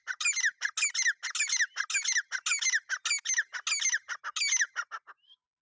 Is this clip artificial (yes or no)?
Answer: no